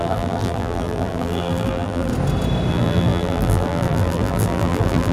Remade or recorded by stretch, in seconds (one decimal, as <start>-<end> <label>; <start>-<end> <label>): 0.0-2.1 remade; 2.1-2.7 recorded; 2.7-5.1 remade